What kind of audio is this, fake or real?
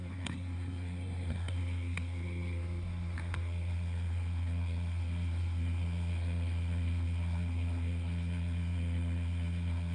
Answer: fake